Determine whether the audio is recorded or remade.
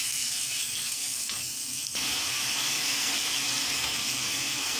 remade